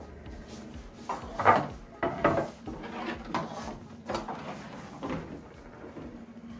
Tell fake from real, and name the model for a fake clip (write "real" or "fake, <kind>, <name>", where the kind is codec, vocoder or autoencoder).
real